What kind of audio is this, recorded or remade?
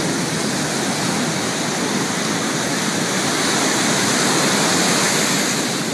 recorded